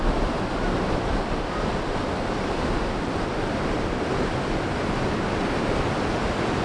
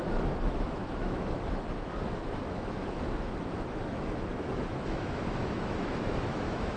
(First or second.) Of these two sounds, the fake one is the second